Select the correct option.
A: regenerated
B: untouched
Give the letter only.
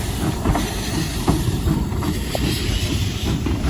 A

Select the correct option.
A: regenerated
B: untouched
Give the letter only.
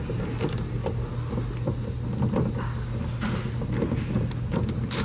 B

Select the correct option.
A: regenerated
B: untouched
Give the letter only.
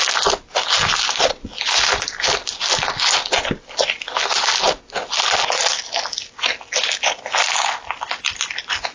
B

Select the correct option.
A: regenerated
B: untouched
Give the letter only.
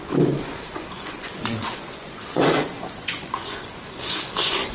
A